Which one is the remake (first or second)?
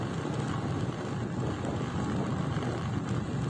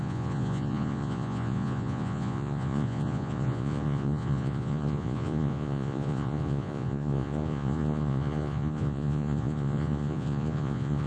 second